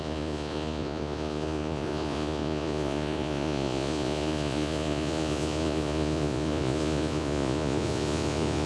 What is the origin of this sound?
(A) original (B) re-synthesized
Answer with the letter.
B